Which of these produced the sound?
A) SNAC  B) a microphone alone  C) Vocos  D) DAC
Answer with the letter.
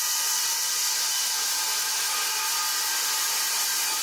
B